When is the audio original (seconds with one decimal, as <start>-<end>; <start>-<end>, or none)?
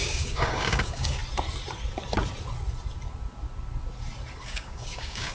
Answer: 1.2-4.4